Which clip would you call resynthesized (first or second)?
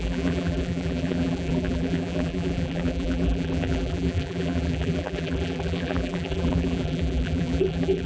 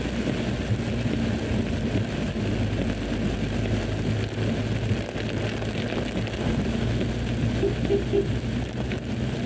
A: first